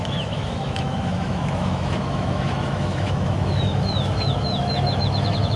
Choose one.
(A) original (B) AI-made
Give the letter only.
B